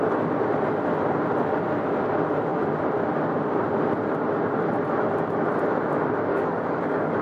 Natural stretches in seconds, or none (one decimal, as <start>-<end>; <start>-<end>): 0.0-6.3